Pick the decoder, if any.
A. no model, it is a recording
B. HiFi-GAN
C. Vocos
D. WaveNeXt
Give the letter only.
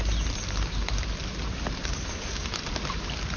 A